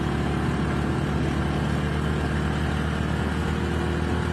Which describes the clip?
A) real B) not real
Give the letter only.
A